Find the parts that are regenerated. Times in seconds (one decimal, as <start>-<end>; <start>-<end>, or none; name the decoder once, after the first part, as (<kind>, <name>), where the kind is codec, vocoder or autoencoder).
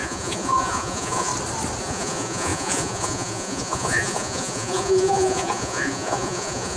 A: 0.0-1.3 (vocoder, Vocos); 1.8-6.8